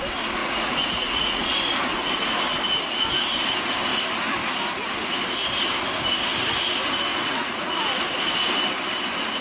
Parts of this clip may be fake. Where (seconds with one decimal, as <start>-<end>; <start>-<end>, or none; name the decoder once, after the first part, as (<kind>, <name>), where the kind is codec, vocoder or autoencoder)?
0.4-1.5 (vocoder, Vocos); 7.1-7.8